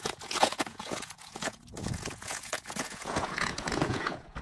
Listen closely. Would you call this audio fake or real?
fake